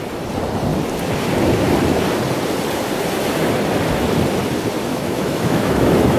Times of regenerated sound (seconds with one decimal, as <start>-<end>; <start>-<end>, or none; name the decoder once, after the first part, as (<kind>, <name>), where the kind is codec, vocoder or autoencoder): 4.9-6.2 (autoencoder, DAC-VAE)